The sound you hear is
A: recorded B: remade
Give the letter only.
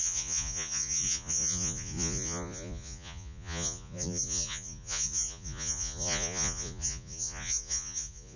B